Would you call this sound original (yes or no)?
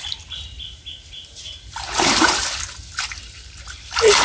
yes